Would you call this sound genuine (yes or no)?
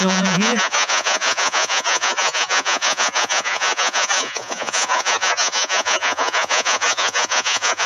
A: no